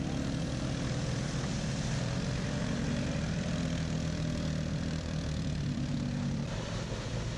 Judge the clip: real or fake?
fake